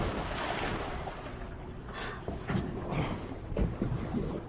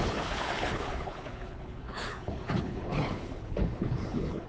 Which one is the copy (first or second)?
second